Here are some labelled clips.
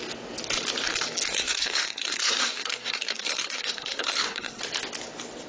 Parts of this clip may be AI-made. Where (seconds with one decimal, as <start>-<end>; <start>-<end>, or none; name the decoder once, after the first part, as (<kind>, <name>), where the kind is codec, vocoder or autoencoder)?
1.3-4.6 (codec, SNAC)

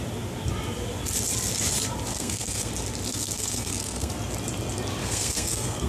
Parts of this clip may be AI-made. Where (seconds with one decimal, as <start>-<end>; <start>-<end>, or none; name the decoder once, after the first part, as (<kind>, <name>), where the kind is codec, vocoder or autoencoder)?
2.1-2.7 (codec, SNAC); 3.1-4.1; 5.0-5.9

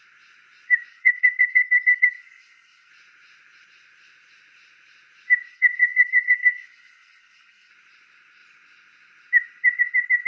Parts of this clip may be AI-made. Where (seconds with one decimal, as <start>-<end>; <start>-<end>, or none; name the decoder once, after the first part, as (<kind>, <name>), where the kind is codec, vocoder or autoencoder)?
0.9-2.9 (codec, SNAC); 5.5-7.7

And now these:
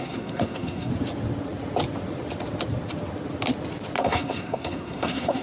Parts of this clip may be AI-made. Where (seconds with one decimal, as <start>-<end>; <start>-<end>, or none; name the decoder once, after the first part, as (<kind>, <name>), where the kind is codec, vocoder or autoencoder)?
0.0-0.9 (codec, SNAC); 4.0-5.4

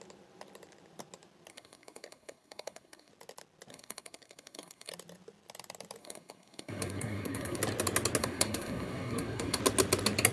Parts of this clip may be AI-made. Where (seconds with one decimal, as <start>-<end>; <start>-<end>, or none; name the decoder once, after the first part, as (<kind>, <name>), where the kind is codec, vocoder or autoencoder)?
1.5-3.1 (codec, SNAC); 3.7-4.9; 6.0-7.6; 8.2-9.6

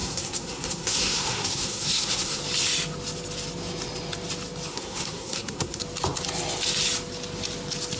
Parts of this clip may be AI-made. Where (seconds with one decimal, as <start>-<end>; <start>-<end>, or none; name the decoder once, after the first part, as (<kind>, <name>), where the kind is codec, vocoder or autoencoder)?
0.0-2.4 (codec, SNAC); 4.7-5.8

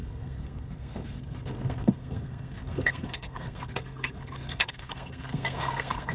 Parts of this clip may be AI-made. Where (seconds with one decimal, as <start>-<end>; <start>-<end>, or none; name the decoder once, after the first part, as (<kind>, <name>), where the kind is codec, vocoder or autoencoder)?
0.0-6.1 (codec, SNAC)